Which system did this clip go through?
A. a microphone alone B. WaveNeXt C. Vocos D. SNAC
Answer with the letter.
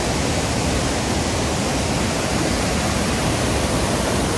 A